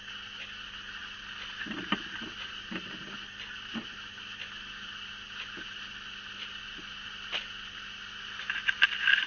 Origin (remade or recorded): recorded